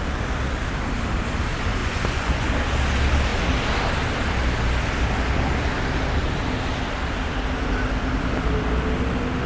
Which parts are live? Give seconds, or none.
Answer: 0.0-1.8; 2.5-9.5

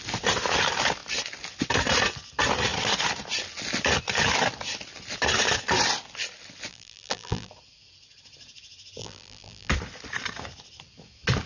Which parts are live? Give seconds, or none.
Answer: 0.0-6.7; 7.5-9.0; 9.7-11.5

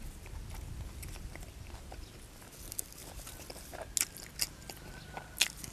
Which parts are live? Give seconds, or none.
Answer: 0.0-5.7

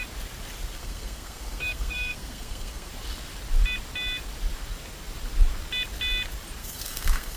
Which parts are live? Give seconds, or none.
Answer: 0.0-0.8; 2.9-6.6

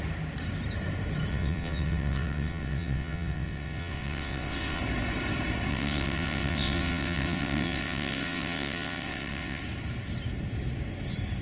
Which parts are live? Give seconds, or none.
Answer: 0.0-1.3; 4.8-5.7; 9.6-11.4